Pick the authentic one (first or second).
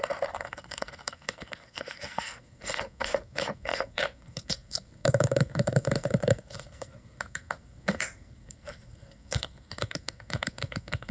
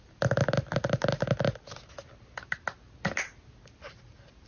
second